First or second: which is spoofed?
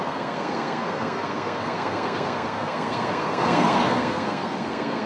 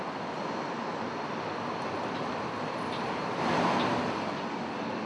first